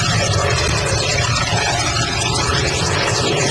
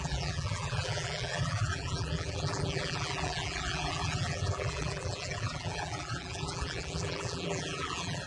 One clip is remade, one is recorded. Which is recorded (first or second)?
first